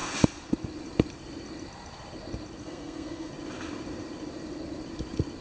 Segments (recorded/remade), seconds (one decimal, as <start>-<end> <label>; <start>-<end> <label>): 0.0-2.6 recorded; 2.6-3.3 remade; 3.3-5.4 recorded